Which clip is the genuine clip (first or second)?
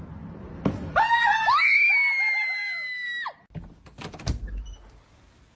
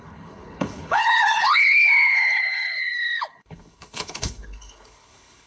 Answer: first